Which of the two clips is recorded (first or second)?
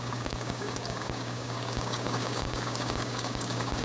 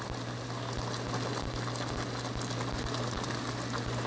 second